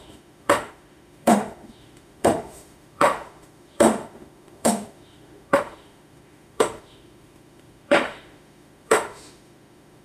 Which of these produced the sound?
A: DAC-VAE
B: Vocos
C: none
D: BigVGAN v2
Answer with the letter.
A